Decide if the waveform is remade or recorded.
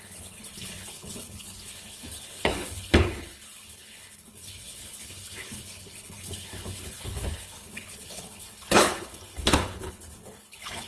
remade